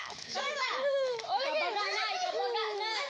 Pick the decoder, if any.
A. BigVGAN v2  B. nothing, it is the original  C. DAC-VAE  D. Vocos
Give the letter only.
C